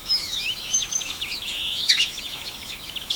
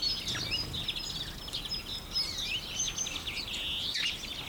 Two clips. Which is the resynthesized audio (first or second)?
first